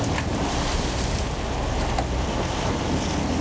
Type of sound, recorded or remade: recorded